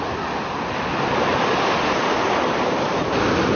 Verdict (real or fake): real